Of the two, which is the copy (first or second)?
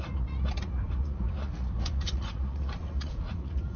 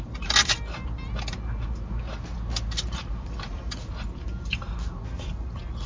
first